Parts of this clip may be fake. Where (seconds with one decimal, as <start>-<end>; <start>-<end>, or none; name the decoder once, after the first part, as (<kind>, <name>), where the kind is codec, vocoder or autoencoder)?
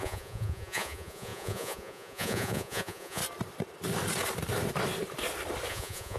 0.0-3.2 (vocoder, Vocos); 5.7-6.2